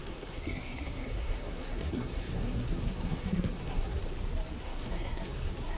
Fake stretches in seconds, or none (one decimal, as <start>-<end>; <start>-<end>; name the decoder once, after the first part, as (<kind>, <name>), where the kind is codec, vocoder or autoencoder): 0.0-4.0 (codec, SNAC); 4.6-5.8

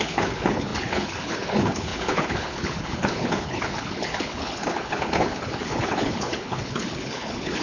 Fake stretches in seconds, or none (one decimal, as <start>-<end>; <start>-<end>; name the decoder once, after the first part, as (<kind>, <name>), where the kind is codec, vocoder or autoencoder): 0.0-7.6 (codec, HILCodec)

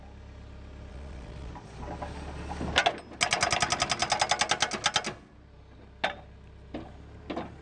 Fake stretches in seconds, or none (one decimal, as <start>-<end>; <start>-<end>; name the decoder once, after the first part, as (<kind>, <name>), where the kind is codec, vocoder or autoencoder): 0.9-1.5 (vocoder, Vocos)

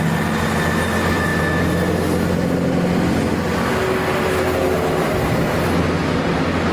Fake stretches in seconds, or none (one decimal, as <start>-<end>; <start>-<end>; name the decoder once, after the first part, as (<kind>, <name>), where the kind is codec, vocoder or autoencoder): none

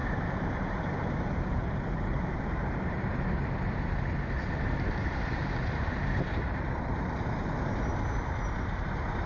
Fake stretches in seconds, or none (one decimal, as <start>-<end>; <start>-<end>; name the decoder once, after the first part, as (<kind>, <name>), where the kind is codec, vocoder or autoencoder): 0.0-3.2 (vocoder, BigVGAN v2); 5.4-7.4

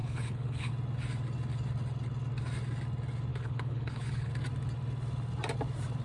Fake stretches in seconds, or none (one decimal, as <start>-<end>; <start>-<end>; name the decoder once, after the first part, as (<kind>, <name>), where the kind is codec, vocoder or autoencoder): 0.0-0.7 (codec, HILCodec); 3.3-4.3

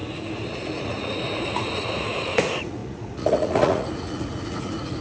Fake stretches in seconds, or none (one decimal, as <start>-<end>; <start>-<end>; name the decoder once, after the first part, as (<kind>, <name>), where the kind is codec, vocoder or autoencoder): 0.0-5.0 (vocoder, Vocos)

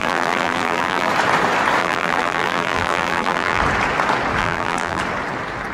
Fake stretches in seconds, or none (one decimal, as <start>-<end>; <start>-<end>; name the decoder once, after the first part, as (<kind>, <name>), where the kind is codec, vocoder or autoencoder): 0.0-1.1 (vocoder, BigVGAN v2); 1.8-3.6; 4.4-5.0